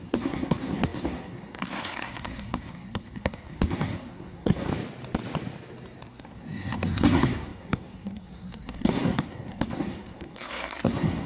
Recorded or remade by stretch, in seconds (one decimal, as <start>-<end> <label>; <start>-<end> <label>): 0.0-4.7 remade; 4.7-6.1 recorded; 6.1-11.3 remade